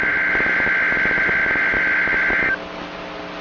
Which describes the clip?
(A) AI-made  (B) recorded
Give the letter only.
B